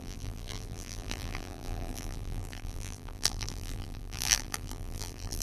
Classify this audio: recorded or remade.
remade